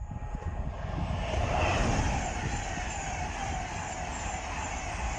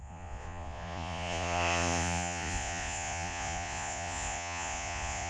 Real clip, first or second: first